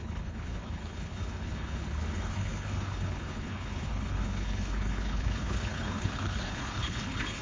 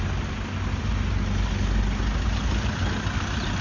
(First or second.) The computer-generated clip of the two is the first